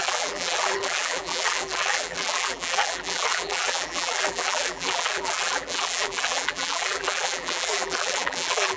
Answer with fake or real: fake